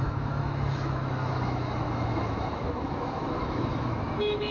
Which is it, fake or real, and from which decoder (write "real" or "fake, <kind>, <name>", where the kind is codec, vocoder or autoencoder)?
fake, autoencoder, DAC-VAE